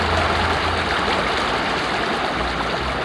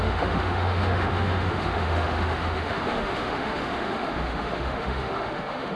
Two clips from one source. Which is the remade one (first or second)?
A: second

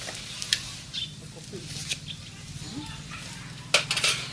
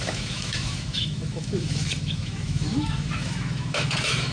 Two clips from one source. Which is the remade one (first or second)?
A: second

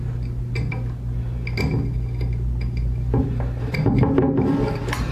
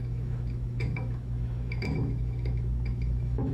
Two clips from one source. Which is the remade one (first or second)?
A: second